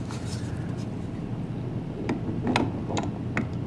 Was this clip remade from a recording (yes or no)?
no